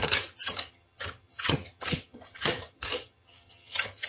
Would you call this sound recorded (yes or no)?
no